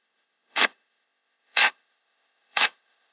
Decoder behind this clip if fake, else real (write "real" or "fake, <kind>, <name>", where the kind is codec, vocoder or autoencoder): fake, codec, ZipCodec